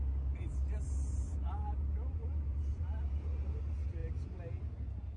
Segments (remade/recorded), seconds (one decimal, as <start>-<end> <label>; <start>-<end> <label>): 0.0-0.5 recorded; 0.5-3.6 remade; 3.6-5.2 recorded